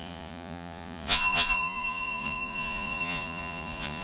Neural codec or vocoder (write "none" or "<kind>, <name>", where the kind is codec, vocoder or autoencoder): vocoder, Vocos